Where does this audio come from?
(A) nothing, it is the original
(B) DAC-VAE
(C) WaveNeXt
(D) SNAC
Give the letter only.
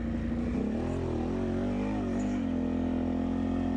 A